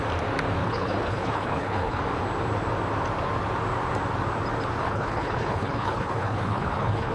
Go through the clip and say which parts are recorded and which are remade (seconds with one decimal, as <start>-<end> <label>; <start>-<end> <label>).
0.0-0.6 recorded; 0.6-2.0 remade; 2.0-4.8 recorded; 4.8-7.1 remade